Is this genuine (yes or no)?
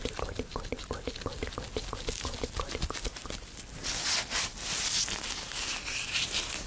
yes